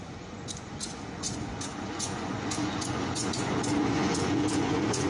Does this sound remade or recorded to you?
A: remade